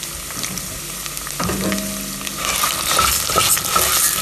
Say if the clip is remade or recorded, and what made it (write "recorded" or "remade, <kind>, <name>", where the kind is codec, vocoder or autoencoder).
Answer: recorded